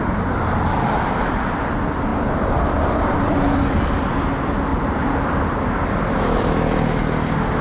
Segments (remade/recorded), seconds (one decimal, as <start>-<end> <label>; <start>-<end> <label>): 0.0-4.7 recorded; 4.7-5.4 remade; 5.4-7.6 recorded